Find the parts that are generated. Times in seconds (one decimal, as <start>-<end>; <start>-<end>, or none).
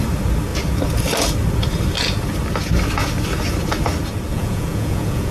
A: 4.3-5.3